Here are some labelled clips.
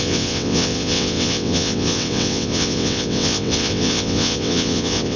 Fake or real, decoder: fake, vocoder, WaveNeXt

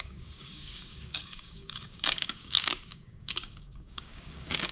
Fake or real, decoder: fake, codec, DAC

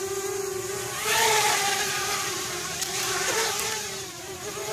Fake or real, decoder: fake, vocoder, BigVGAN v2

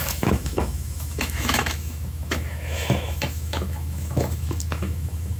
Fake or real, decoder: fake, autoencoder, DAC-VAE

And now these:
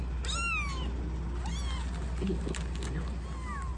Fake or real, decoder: real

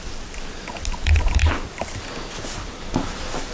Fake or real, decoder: real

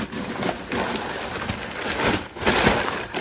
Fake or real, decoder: fake, vocoder, BigVGAN v2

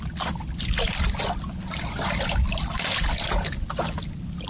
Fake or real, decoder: fake, vocoder, BigVGAN v2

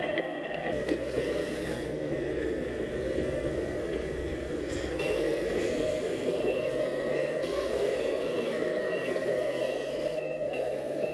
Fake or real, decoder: fake, codec, SNAC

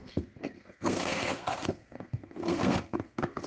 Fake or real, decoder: fake, codec, SNAC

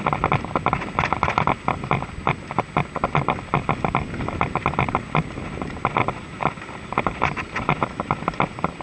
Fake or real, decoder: real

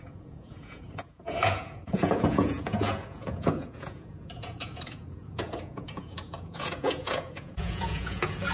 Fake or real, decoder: fake, vocoder, Vocos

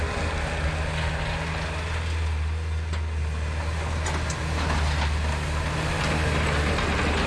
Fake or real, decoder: real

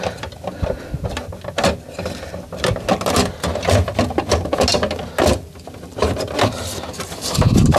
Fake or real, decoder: real